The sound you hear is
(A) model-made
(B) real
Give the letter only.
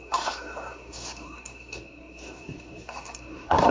A